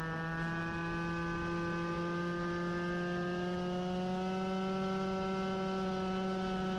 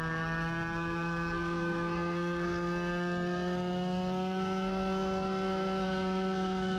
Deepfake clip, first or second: second